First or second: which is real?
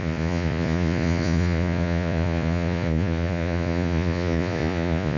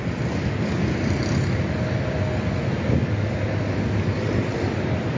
second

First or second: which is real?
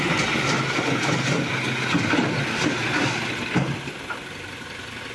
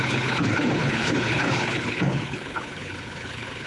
first